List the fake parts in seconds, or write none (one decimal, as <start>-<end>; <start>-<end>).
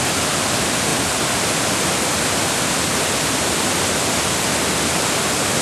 none